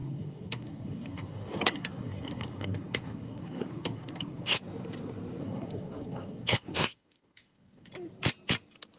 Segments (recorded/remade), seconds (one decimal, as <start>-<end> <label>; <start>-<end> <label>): 0.0-4.6 remade; 4.6-5.4 recorded; 5.4-7.9 remade; 7.9-9.0 recorded

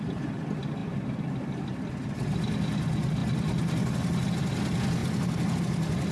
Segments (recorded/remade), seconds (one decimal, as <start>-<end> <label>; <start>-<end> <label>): 0.0-5.0 recorded; 5.0-5.6 remade; 5.6-6.1 recorded

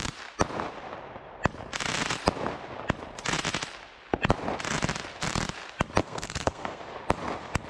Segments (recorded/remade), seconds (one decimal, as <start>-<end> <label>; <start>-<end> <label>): 0.0-6.0 recorded; 6.0-6.8 remade; 6.8-7.7 recorded

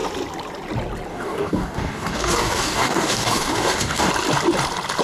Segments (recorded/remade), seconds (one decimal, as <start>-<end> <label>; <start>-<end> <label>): 0.0-1.1 recorded; 1.1-4.1 remade; 4.1-5.0 recorded

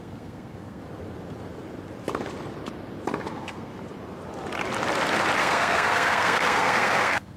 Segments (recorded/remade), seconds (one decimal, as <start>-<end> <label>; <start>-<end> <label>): 0.0-0.8 remade; 0.8-3.3 recorded; 3.3-3.7 remade; 3.7-5.4 recorded; 5.4-7.4 remade

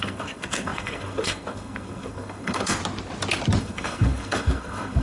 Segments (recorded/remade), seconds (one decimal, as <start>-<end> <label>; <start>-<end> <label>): 0.0-2.8 remade; 2.8-3.6 recorded; 3.6-5.0 remade